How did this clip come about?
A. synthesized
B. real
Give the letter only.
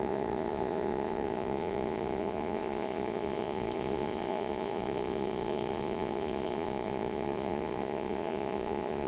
A